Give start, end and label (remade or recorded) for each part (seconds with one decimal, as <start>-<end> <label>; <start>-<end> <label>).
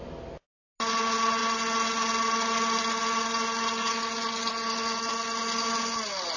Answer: 0.0-6.4 recorded